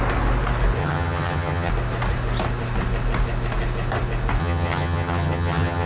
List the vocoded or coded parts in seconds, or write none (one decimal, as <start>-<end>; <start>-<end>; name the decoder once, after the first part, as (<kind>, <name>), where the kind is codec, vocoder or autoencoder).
0.8-1.7 (vocoder, HiFi-GAN); 4.4-5.9

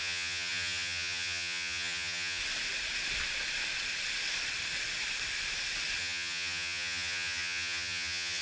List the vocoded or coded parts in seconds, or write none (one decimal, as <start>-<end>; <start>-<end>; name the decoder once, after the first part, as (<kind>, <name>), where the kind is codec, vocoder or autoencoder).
0.0-2.4 (vocoder, HiFi-GAN); 6.0-8.4